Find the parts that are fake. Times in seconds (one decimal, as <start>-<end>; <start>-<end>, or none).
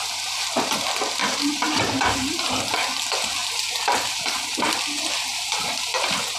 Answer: 1.2-2.5; 3.4-4.8; 5.3-6.4